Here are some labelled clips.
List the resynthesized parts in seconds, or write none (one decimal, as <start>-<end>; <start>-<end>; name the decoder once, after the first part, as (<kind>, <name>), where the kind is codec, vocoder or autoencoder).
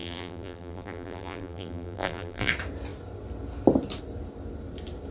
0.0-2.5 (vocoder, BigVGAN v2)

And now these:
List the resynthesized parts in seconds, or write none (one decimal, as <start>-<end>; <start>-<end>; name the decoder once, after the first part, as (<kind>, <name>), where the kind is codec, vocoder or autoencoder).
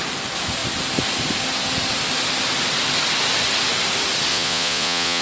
4.3-5.2 (vocoder, Vocos)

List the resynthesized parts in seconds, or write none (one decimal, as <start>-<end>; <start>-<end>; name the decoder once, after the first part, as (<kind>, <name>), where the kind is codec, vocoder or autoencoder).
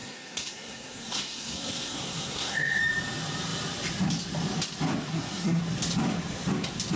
0.0-2.8 (codec, SNAC); 5.1-5.6